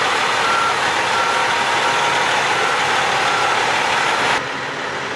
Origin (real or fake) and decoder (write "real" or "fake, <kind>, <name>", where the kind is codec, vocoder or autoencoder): real